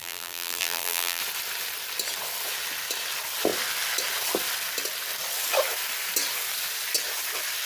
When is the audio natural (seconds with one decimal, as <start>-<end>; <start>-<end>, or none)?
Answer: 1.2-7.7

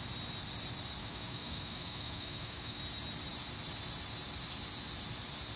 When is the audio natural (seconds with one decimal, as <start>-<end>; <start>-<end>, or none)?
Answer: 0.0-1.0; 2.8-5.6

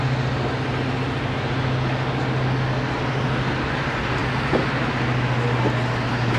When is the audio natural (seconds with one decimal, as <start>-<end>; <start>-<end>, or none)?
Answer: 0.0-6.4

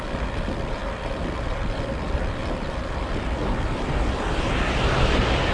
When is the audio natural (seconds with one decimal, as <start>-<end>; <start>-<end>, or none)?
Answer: 0.0-5.5

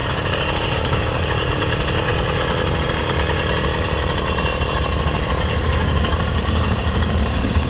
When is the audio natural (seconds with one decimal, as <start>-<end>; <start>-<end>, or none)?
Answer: 2.1-5.0

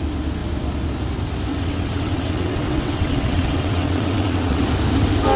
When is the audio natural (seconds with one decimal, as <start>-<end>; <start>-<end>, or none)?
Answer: 0.0-1.5; 4.6-5.4

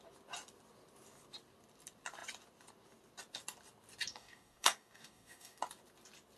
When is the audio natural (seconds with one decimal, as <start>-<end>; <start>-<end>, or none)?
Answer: 0.0-4.1; 5.6-6.4

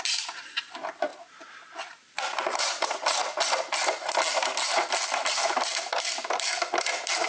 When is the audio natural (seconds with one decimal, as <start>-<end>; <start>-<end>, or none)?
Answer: 3.2-5.2